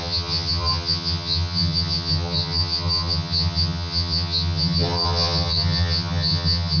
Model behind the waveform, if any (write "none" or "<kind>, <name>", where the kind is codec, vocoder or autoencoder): vocoder, HiFi-GAN